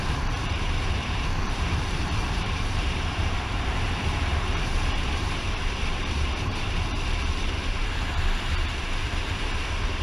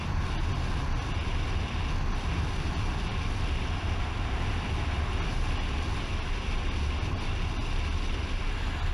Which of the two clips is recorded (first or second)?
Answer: second